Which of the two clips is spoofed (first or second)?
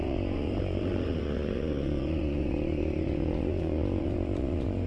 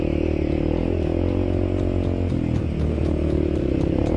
first